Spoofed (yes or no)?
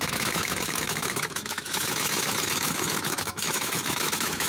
yes